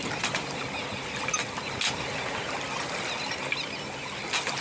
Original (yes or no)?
yes